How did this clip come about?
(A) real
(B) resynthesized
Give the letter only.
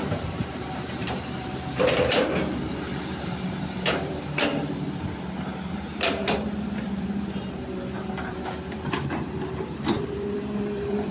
B